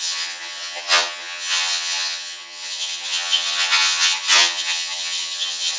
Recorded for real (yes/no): no